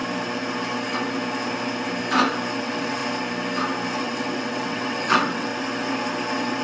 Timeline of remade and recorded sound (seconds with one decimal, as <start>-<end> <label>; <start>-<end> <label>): 0.0-2.6 recorded; 2.6-3.0 remade; 3.0-4.0 recorded; 4.0-5.5 remade; 5.5-6.6 recorded